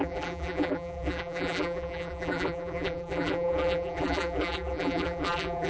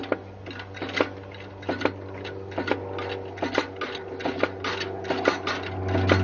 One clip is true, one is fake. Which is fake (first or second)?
first